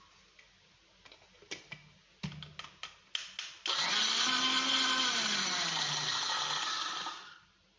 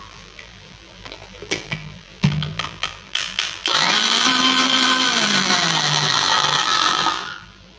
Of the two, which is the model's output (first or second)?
second